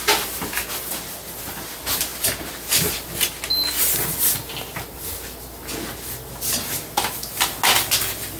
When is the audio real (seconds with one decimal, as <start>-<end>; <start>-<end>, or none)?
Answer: 0.0-8.4